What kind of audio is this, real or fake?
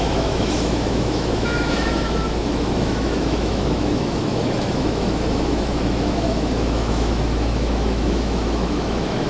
fake